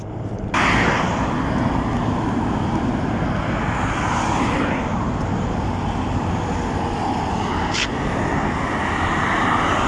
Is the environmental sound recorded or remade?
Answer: recorded